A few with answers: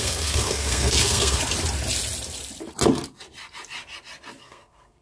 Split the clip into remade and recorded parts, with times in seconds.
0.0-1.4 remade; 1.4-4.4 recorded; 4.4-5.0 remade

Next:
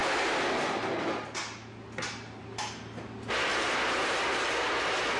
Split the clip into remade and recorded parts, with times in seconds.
0.0-3.5 recorded; 3.5-4.0 remade; 4.0-5.2 recorded

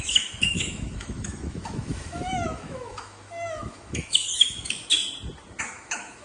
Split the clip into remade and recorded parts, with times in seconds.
0.0-5.0 remade; 5.0-5.6 recorded; 5.6-6.2 remade

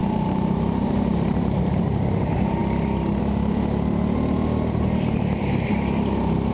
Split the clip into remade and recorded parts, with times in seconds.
0.0-1.8 remade; 1.8-6.5 recorded

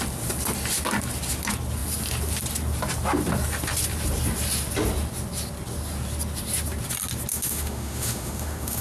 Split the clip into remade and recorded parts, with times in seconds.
0.0-7.3 recorded; 7.3-8.8 remade

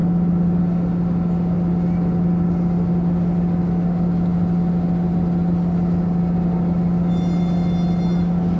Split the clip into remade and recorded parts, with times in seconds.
0.0-8.6 recorded